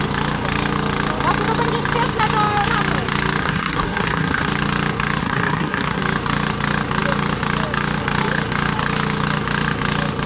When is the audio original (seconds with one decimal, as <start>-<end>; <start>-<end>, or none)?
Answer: 0.0-3.4; 4.5-5.2; 6.0-10.3